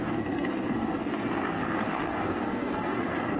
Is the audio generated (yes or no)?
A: yes